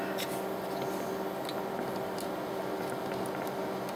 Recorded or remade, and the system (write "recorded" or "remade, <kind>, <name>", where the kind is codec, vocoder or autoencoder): recorded